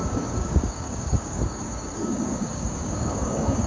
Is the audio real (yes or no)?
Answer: no